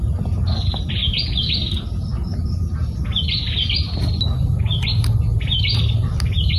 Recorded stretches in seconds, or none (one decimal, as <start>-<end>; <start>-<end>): 0.0-1.0; 1.5-6.6